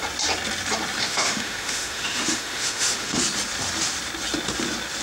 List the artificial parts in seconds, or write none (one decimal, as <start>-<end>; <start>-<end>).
1.0-3.2